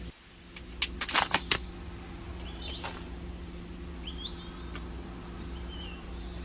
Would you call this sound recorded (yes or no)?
yes